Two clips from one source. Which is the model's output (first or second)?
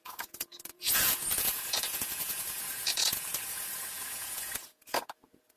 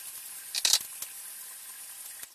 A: first